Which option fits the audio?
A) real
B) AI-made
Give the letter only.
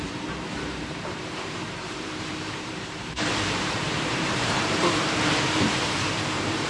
B